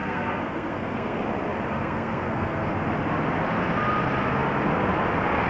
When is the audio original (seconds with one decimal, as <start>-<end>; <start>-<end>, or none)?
1.2-1.7; 2.7-5.5